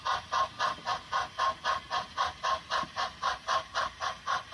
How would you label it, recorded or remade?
remade